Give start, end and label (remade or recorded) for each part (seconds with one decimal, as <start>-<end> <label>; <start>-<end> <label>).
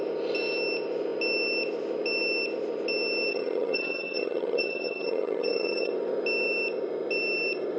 0.0-3.3 recorded; 3.3-5.9 remade; 5.9-7.8 recorded